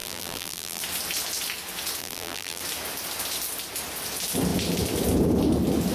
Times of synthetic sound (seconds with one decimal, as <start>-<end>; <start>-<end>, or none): 0.0-0.8; 2.0-2.6